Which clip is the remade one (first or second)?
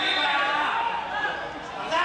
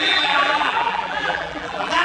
second